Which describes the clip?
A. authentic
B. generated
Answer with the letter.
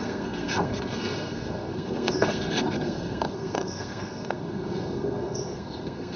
B